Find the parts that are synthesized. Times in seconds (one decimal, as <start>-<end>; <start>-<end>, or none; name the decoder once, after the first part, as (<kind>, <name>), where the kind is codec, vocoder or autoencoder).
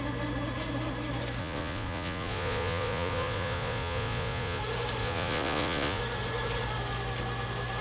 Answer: 1.4-4.6 (vocoder, Vocos); 5.0-6.0